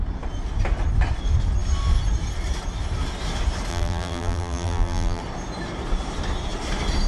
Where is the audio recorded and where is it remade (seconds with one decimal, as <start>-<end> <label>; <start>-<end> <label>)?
0.0-3.7 recorded; 3.7-5.2 remade; 5.2-7.1 recorded